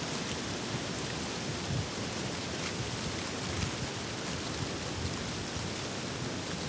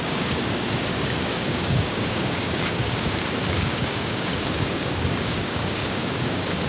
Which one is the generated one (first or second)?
second